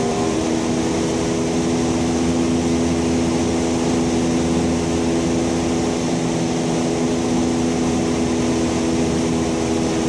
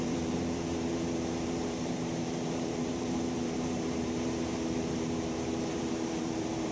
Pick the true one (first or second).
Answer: first